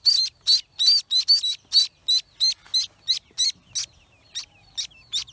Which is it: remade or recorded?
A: recorded